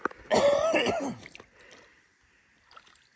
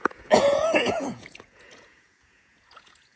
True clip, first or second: first